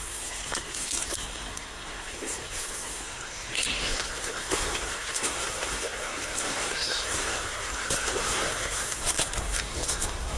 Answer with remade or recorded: remade